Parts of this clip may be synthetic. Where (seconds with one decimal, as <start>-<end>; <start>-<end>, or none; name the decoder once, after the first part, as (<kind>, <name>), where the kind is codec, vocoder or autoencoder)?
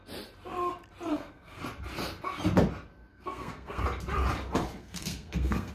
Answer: 1.1-1.6 (codec, SNAC); 3.1-3.8; 4.8-5.7